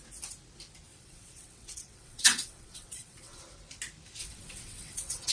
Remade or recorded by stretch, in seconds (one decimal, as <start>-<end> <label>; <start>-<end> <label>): 0.0-0.9 recorded; 0.9-3.4 remade; 3.4-4.2 recorded; 4.2-5.3 remade